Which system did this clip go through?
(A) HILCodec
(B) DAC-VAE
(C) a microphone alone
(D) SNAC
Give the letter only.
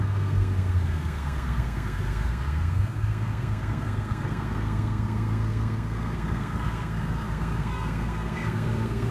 D